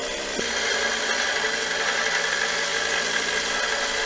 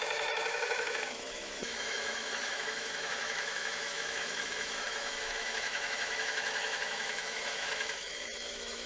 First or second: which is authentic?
first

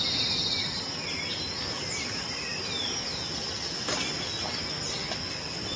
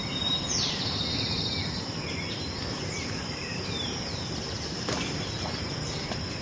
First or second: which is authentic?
first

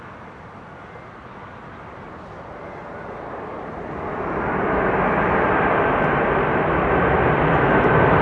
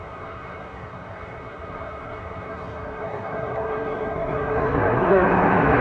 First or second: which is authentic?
first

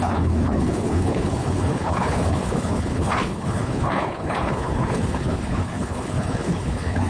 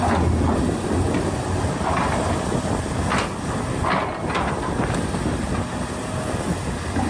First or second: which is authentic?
second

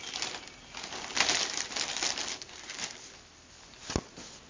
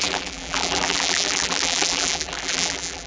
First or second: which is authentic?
first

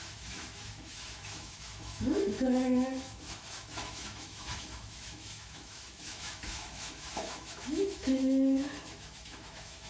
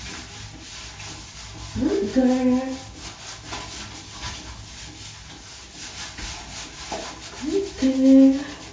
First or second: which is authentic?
second